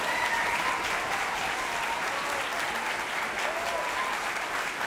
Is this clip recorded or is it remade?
recorded